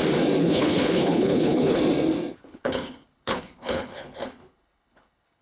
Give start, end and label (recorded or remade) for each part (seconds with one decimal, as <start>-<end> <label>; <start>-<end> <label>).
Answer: 0.0-0.4 recorded; 0.4-1.8 remade; 1.8-2.4 recorded; 2.4-5.4 remade